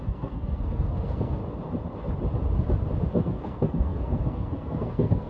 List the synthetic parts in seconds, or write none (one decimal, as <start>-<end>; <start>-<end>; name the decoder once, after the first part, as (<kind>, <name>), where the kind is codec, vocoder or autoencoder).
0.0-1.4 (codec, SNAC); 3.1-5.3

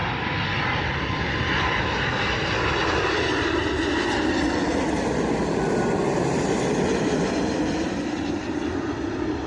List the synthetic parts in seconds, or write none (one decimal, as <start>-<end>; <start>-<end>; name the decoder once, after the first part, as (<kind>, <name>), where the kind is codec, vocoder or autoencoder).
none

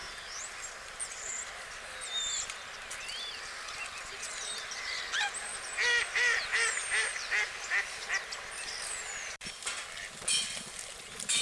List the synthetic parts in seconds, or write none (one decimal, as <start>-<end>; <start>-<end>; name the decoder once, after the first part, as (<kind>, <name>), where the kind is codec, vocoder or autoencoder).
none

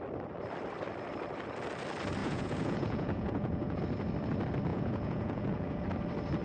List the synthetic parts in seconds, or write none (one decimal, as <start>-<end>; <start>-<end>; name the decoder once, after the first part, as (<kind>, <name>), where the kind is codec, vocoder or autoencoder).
2.2-3.8 (vocoder, Vocos); 4.7-5.8